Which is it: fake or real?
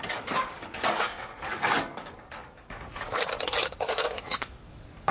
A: fake